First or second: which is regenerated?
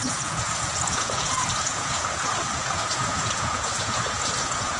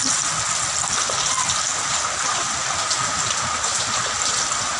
first